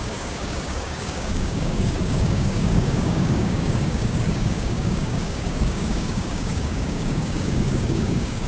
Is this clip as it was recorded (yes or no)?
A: no